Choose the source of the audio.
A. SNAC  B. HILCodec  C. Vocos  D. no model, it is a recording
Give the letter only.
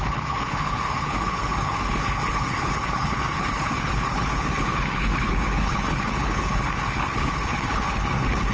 B